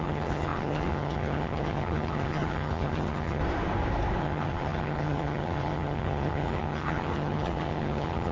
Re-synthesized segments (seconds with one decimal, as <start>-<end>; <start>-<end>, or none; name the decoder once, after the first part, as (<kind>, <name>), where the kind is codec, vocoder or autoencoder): 0.0-3.4 (vocoder, HiFi-GAN); 4.2-8.3